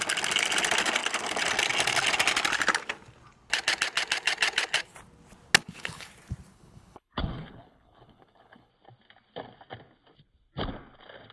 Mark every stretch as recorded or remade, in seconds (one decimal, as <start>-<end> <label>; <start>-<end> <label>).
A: 0.0-5.6 recorded; 5.6-6.1 remade; 6.1-6.5 recorded; 6.5-8.7 remade; 8.7-11.3 recorded